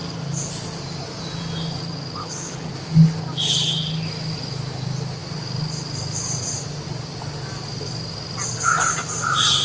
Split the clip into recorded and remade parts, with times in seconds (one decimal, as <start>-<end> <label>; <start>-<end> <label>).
0.0-2.2 recorded; 2.2-2.7 remade; 2.7-9.6 recorded